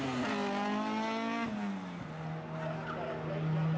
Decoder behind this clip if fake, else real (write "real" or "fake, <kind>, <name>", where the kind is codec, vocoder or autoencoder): real